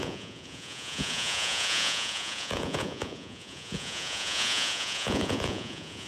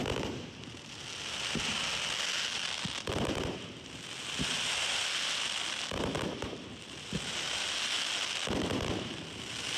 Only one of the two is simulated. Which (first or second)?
first